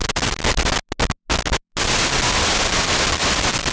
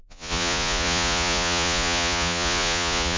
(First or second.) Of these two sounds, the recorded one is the first